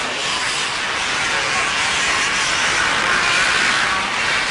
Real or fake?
real